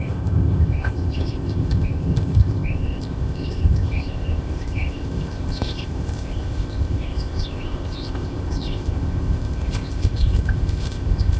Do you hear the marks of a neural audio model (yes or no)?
yes